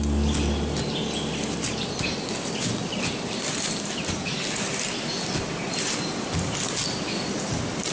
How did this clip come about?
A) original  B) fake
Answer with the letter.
A